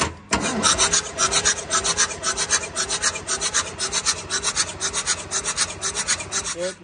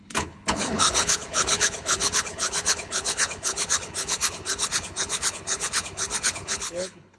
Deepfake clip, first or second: second